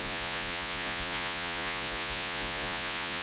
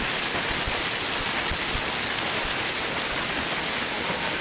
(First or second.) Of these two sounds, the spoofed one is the first